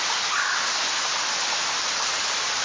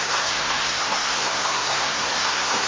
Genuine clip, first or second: first